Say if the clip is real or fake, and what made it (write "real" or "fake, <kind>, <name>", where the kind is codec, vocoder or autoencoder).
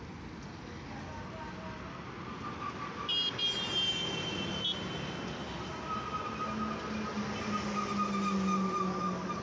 real